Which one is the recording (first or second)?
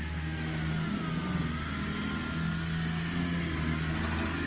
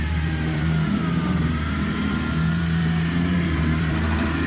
first